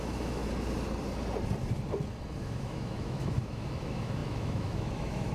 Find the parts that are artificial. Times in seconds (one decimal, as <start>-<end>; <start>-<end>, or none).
0.0-0.4; 2.4-5.3